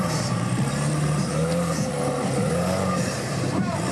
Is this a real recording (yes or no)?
no